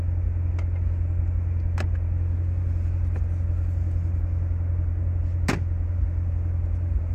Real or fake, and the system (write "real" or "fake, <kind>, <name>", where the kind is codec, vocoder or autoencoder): real